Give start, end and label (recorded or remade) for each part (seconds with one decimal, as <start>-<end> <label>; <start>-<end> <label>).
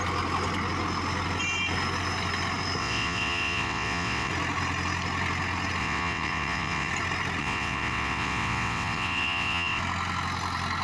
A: 0.0-2.8 recorded; 2.8-4.3 remade; 4.3-5.8 recorded; 5.8-6.9 remade; 6.9-7.4 recorded; 7.4-9.8 remade; 9.8-10.8 recorded